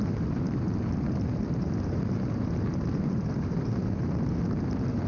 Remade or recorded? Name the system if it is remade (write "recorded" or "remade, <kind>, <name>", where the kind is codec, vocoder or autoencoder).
remade, vocoder, BigVGAN v2